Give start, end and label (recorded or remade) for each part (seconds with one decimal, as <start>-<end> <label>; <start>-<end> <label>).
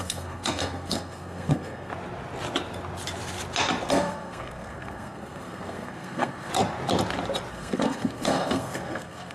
0.0-1.9 remade; 1.9-3.9 recorded; 3.9-6.5 remade; 6.5-7.5 recorded; 7.5-9.3 remade